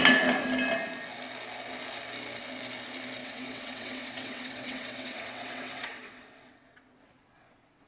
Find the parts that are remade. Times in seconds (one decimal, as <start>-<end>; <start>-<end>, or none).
3.2-7.9